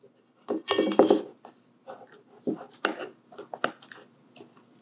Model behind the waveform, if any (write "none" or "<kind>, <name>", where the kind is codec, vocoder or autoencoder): none